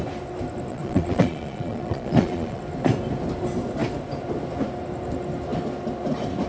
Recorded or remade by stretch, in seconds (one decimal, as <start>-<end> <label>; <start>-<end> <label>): 0.0-0.7 recorded; 0.7-2.6 remade; 2.6-6.5 recorded

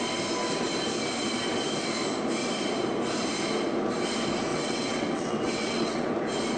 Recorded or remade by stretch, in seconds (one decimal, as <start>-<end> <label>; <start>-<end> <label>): 0.0-4.5 recorded; 4.5-6.1 remade; 6.1-6.6 recorded

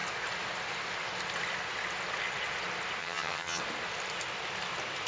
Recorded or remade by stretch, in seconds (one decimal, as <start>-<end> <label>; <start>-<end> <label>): 0.0-3.0 recorded; 3.0-3.6 remade; 3.6-5.1 recorded

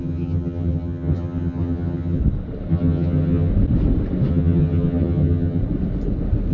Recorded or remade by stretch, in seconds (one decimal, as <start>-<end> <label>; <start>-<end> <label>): 0.0-2.2 remade; 2.2-2.7 recorded; 2.7-3.5 remade; 3.5-4.3 recorded; 4.3-5.6 remade; 5.6-6.5 recorded

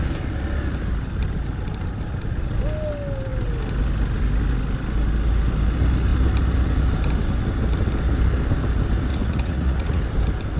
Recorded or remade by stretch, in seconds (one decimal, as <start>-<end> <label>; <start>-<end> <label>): 0.0-9.1 recorded; 9.1-10.0 remade; 10.0-10.6 recorded

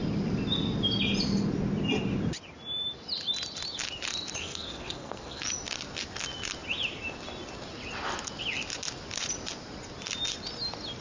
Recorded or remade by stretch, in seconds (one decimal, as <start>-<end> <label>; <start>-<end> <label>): 0.0-4.4 recorded; 4.4-5.4 remade; 5.4-11.0 recorded